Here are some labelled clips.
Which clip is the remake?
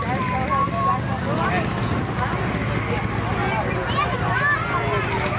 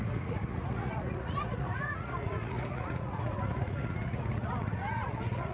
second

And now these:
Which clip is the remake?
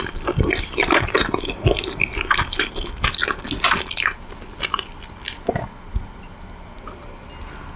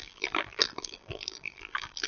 second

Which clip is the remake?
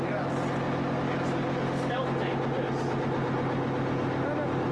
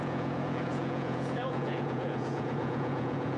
second